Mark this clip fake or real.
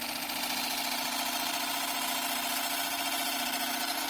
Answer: real